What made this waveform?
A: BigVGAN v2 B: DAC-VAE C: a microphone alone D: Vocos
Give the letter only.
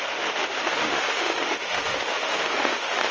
B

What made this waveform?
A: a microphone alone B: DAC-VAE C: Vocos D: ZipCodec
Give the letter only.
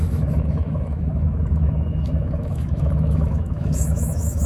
B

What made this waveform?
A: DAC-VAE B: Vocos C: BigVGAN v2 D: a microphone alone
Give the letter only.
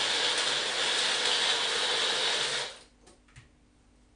D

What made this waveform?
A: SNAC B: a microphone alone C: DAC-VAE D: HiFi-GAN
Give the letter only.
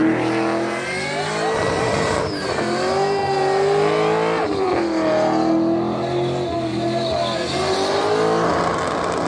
B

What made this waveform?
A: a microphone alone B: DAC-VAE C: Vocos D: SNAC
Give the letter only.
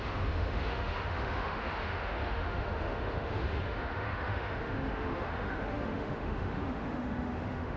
B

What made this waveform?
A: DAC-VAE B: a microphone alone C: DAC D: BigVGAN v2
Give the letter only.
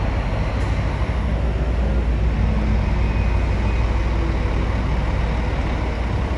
B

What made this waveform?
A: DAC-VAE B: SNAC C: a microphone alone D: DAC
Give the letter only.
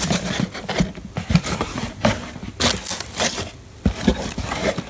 C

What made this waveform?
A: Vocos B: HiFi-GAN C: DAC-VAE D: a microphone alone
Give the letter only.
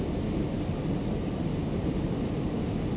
D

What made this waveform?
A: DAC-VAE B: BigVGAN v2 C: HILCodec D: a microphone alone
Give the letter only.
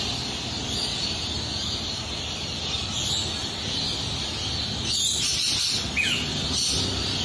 D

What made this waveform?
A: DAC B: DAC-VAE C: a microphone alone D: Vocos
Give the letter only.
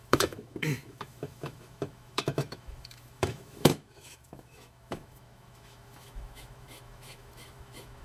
B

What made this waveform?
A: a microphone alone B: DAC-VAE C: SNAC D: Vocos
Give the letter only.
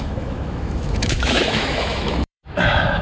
B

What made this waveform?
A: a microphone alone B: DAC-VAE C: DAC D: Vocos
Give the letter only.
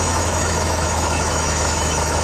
B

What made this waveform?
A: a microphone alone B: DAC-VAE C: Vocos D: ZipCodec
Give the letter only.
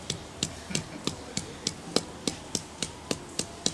A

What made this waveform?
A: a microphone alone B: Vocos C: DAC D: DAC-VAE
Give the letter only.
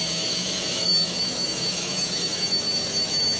D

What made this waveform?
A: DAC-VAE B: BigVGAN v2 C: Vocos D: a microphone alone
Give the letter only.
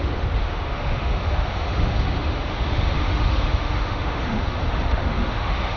A